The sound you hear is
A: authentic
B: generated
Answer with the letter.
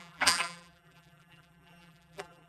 B